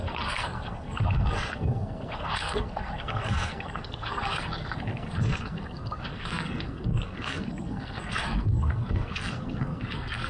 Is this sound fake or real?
fake